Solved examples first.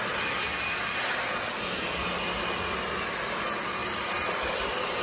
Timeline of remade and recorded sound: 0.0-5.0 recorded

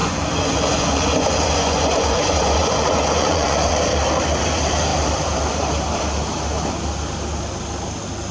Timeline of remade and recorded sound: 0.0-3.8 remade; 3.8-8.3 recorded

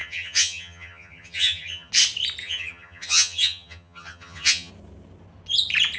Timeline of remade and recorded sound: 0.0-1.9 remade; 1.9-2.4 recorded; 2.4-4.7 remade; 4.7-6.0 recorded

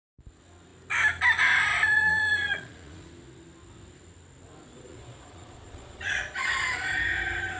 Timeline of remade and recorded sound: 0.0-1.7 recorded; 1.7-3.1 remade; 3.1-4.7 recorded; 4.7-6.5 remade; 6.5-7.6 recorded